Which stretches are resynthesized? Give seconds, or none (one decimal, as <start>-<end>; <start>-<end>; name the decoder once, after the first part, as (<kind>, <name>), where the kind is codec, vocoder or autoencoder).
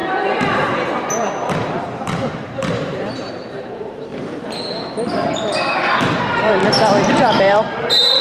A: 0.0-4.1 (vocoder, BigVGAN v2); 6.0-6.6; 7.1-8.2